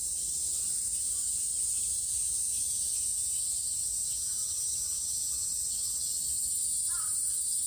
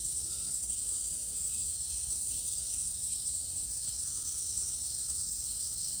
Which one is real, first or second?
first